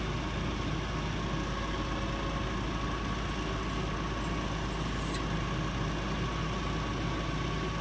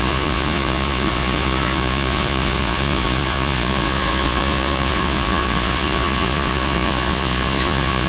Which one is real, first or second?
first